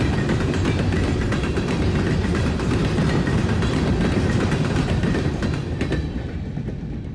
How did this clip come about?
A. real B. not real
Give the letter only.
A